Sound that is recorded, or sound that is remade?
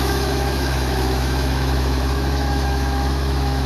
remade